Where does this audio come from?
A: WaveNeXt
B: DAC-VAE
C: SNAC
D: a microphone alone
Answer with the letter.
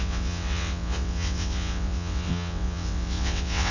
A